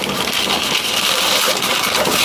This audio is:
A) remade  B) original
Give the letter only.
B